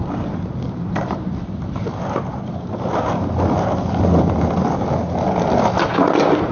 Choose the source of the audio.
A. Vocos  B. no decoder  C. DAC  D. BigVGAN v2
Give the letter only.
B